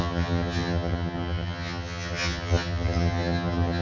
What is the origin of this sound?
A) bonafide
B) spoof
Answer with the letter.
B